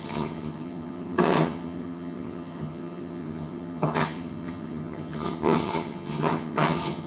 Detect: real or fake fake